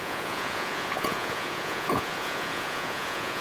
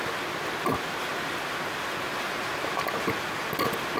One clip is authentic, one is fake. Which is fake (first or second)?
first